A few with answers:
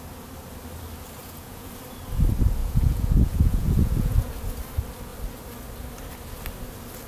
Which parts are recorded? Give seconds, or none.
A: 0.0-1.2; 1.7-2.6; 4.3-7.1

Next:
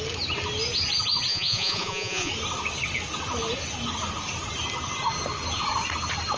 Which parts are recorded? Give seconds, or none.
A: 0.0-1.3; 2.3-6.4

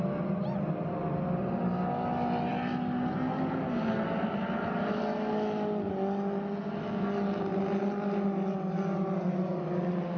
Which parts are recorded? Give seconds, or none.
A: 0.0-10.2

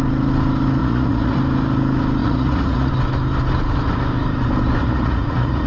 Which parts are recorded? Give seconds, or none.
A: 0.0-0.8; 1.4-2.2; 2.9-4.8

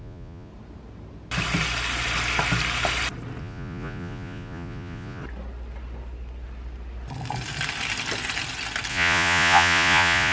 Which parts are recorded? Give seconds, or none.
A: 0.5-3.4; 5.2-8.9